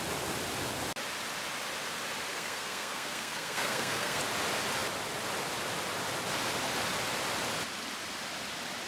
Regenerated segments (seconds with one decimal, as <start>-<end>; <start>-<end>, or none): 2.3-4.2